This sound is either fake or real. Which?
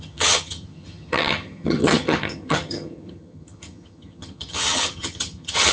fake